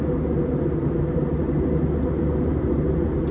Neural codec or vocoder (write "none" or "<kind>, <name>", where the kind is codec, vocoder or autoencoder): none